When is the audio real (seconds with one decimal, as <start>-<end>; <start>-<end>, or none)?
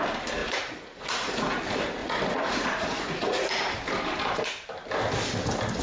0.0-0.4; 1.6-2.0; 3.7-5.8